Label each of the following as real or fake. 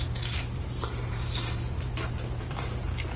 fake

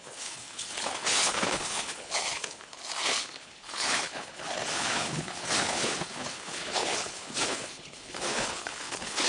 fake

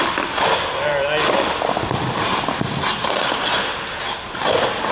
real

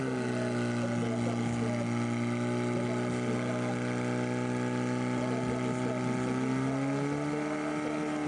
real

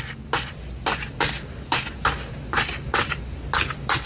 real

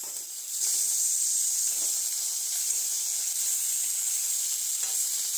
real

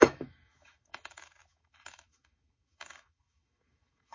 fake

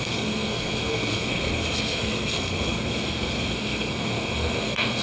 fake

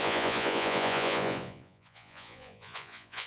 fake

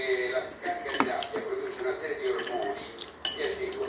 real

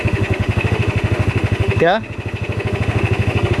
fake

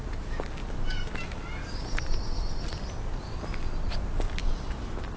real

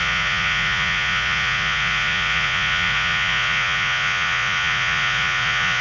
fake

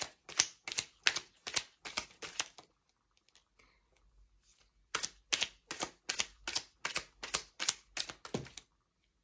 real